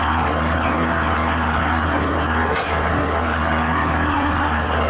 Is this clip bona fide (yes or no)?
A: no